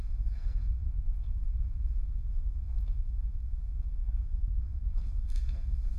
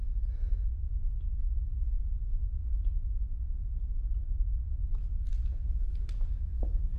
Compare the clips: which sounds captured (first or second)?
second